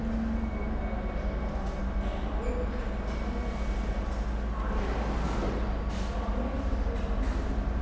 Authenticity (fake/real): real